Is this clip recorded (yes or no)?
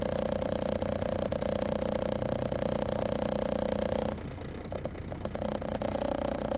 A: yes